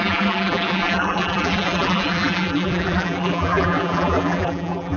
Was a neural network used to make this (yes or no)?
yes